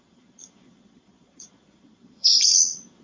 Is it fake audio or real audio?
fake